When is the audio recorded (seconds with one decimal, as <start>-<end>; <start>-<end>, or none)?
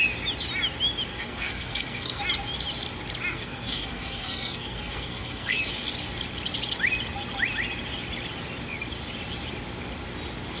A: 0.0-1.1; 2.2-3.3; 5.7-10.6